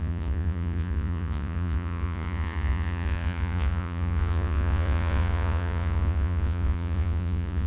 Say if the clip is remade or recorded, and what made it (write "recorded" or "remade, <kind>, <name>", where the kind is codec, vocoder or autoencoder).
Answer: remade, vocoder, Vocos